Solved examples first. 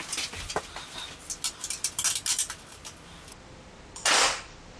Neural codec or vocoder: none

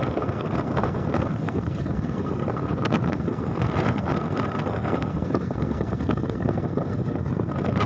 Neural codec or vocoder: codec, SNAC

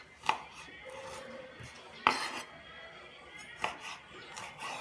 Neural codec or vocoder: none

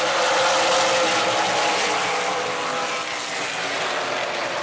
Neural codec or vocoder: none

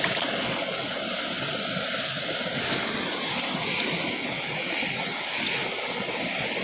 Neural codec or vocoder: none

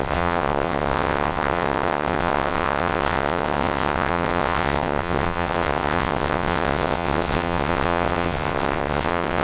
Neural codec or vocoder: vocoder, WaveNeXt